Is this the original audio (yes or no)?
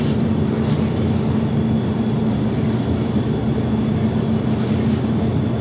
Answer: yes